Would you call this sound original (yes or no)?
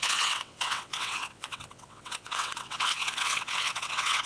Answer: no